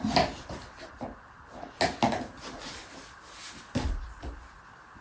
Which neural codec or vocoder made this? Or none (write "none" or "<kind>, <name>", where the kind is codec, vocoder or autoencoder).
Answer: none